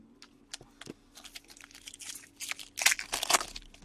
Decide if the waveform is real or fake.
real